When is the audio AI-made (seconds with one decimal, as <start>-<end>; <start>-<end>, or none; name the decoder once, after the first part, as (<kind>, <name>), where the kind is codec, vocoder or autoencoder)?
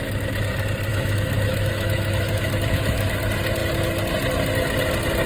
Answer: 0.9-3.1 (autoencoder, DAC-VAE)